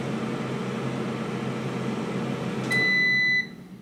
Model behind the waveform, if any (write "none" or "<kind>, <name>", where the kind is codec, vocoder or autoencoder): none